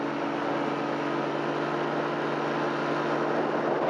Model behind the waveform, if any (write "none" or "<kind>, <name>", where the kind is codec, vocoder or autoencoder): none